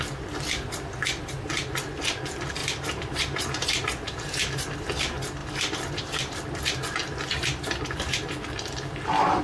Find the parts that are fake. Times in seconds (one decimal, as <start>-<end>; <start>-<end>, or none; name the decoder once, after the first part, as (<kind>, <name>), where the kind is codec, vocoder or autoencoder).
2.6-4.8 (vocoder, BigVGAN v2); 5.4-6.4